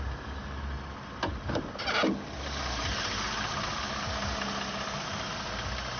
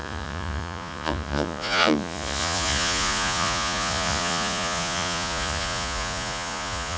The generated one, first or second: second